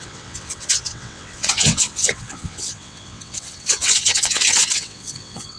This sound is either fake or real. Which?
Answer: fake